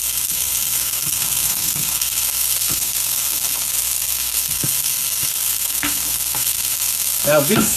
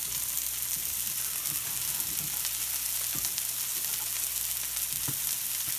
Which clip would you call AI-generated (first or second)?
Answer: first